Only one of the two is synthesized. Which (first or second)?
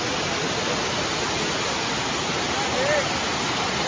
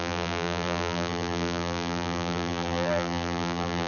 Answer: second